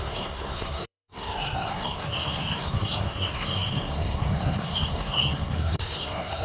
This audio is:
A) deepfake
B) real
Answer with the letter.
A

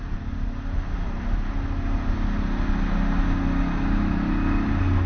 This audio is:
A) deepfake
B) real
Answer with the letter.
B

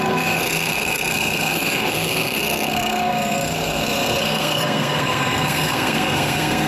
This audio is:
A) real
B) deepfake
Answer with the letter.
B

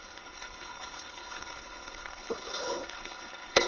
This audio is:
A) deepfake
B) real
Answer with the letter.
A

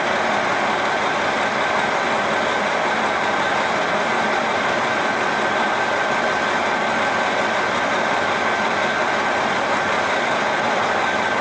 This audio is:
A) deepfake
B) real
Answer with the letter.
B